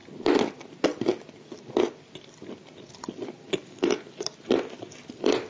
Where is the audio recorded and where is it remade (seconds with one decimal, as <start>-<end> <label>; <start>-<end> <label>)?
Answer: 0.0-5.5 recorded